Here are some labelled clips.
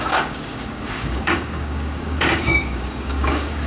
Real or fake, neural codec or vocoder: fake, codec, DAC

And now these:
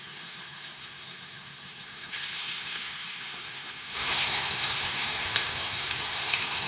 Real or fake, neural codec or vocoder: fake, codec, SNAC